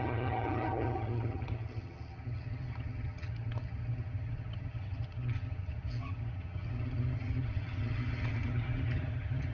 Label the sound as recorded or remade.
remade